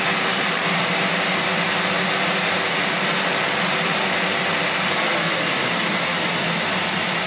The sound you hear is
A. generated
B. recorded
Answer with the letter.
B